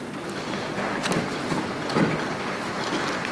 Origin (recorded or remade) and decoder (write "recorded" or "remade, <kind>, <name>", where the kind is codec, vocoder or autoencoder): recorded